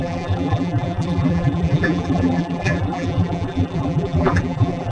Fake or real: fake